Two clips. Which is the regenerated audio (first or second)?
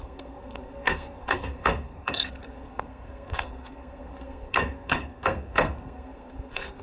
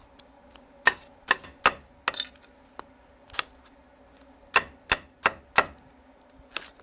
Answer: first